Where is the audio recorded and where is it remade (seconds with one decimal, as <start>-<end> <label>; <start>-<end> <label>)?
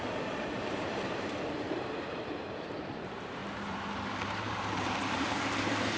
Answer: 0.0-3.4 remade; 3.4-4.4 recorded; 4.4-6.0 remade